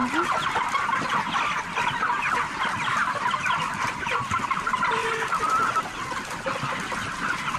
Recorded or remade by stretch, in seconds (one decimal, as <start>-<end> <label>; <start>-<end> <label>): 0.0-7.6 recorded